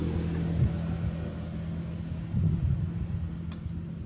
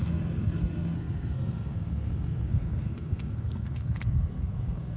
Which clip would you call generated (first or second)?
second